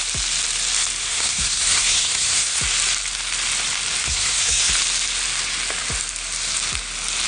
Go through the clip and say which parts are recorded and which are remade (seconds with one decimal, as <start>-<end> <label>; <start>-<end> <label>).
0.0-1.1 recorded; 1.1-2.6 remade; 2.6-4.0 recorded; 4.0-4.7 remade; 4.7-7.3 recorded

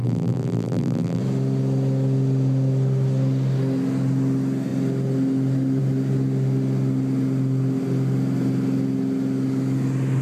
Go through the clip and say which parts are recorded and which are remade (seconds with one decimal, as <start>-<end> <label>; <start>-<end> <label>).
0.0-1.2 remade; 1.2-10.2 recorded

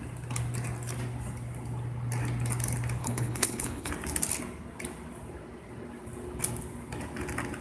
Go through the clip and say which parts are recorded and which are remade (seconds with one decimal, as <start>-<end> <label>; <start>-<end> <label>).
0.0-3.0 recorded; 3.0-3.9 remade; 3.9-7.6 recorded

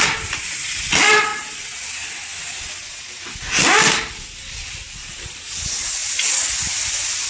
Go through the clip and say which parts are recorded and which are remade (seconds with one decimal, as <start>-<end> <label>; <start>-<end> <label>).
0.0-1.3 recorded; 1.3-1.8 remade; 1.8-7.3 recorded

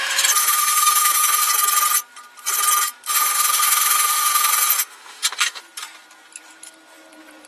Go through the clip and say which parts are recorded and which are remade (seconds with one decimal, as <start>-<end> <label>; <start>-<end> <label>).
0.0-0.4 recorded; 0.4-1.5 remade; 1.5-3.1 recorded; 3.1-5.6 remade; 5.6-7.5 recorded

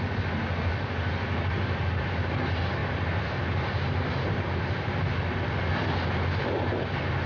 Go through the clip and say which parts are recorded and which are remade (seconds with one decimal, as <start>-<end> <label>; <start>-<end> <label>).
0.0-7.3 recorded